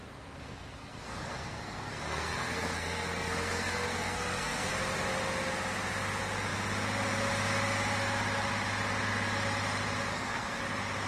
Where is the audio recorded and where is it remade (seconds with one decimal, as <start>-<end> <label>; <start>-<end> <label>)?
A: 0.0-4.7 remade; 4.7-10.1 recorded; 10.1-10.6 remade; 10.6-11.1 recorded